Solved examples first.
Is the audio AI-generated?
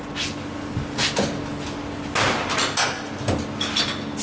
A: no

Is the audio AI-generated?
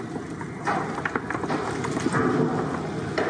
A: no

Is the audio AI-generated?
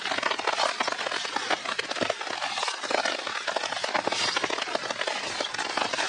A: no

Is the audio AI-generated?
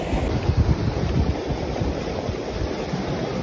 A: no